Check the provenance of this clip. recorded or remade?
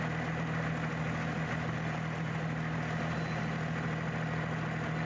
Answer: recorded